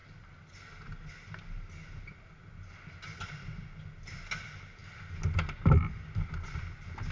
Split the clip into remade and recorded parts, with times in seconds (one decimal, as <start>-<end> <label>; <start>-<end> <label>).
0.0-7.1 recorded